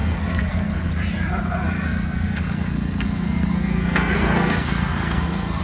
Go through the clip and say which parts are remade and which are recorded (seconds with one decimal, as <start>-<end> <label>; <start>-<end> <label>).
0.0-0.9 remade; 0.9-1.8 recorded; 1.8-5.6 remade